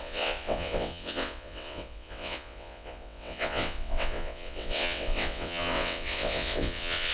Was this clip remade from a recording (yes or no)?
yes